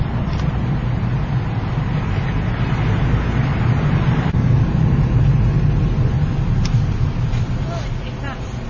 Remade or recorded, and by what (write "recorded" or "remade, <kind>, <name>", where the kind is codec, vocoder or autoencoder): recorded